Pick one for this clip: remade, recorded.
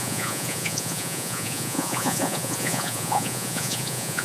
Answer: remade